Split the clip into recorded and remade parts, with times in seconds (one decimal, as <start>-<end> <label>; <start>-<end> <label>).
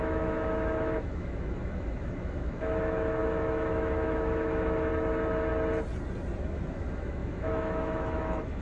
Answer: 0.0-4.9 remade; 4.9-6.4 recorded; 6.4-8.6 remade